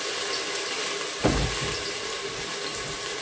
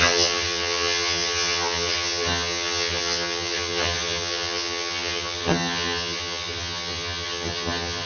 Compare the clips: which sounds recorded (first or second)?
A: first